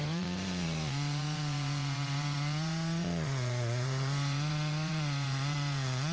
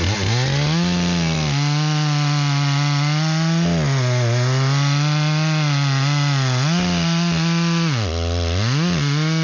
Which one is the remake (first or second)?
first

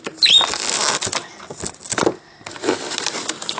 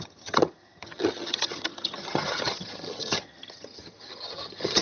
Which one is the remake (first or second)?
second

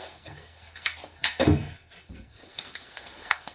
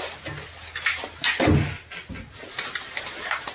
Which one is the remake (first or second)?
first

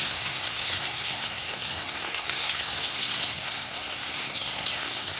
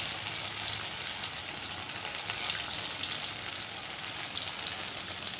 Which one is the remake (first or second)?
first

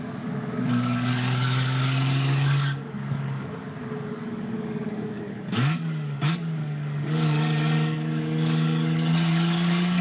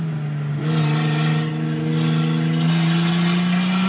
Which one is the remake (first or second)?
first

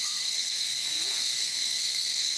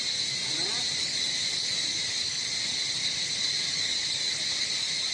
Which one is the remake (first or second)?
first